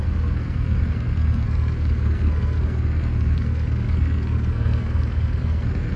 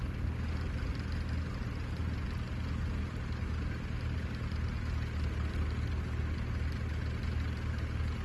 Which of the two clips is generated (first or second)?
first